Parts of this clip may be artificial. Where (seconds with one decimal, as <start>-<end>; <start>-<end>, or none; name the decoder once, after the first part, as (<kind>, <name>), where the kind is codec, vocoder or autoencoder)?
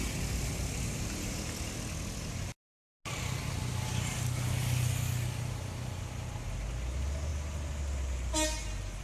none